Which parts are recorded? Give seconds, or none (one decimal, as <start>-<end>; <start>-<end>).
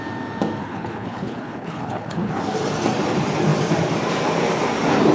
0.0-0.6; 2.3-5.1